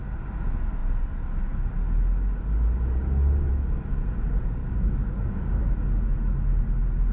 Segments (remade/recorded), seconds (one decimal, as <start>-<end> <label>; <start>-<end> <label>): 0.0-4.6 recorded; 4.6-5.6 remade; 5.6-7.1 recorded